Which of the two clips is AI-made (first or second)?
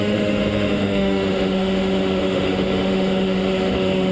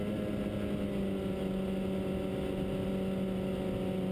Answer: first